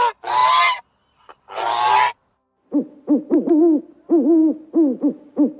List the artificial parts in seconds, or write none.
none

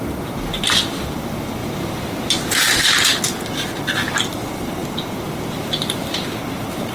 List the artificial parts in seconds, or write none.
1.6-3.0 (vocoder, BigVGAN v2); 4.8-6.4

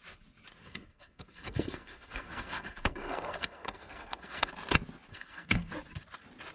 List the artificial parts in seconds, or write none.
0.6-4.5 (codec, SNAC); 5.1-5.7